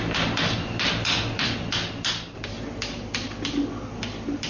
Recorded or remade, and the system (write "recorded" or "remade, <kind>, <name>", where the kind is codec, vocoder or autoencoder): recorded